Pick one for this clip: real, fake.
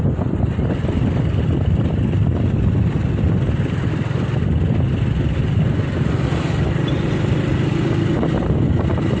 real